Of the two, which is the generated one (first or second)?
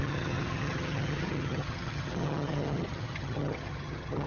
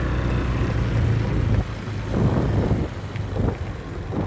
first